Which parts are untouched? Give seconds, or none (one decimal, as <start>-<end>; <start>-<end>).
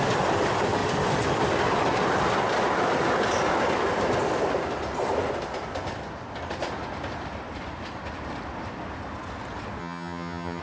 0.0-9.8